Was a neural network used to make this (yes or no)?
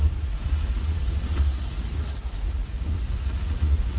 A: yes